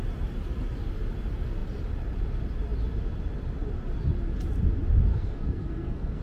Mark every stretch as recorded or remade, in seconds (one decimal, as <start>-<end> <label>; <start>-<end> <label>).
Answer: 0.0-5.1 recorded; 5.1-6.2 remade

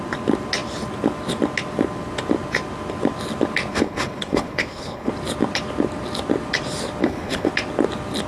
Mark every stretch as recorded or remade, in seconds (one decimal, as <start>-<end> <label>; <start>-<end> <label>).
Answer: 0.0-3.7 recorded; 3.7-5.1 remade; 5.1-7.0 recorded; 7.0-7.5 remade; 7.5-8.3 recorded